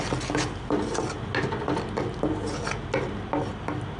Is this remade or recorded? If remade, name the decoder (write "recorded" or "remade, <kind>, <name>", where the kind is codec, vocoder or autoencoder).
recorded